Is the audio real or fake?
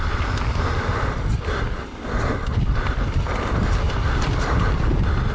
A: real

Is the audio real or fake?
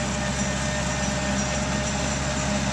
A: real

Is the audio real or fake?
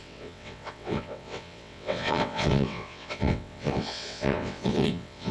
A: fake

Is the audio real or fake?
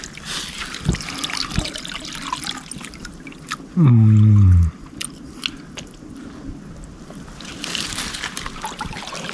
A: real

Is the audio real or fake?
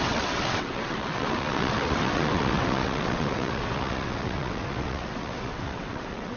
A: fake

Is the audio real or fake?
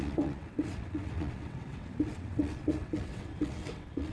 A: fake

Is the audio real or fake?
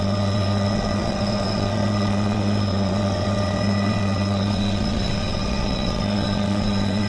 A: fake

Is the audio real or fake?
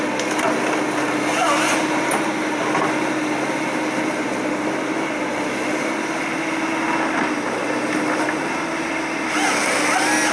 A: real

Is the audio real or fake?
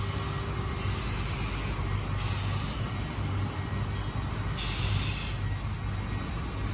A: real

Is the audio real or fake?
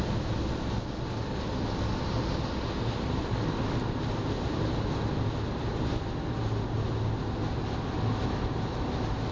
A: real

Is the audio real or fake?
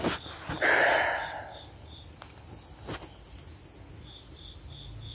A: real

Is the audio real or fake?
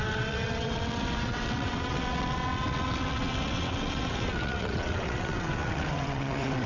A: fake